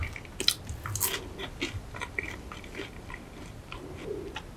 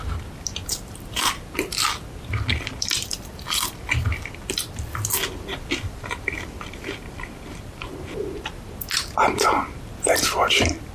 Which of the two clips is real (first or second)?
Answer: first